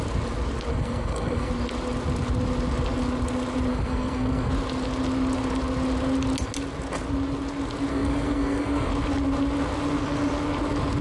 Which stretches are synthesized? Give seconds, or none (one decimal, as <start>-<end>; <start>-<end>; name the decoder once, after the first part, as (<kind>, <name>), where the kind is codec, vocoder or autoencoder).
0.7-1.5 (codec, SNAC); 3.7-4.5; 7.9-8.9